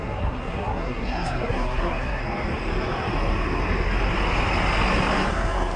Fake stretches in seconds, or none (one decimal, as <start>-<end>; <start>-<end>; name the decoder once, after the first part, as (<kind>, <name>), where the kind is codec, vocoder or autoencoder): 0.0-2.2 (codec, SNAC); 5.3-5.8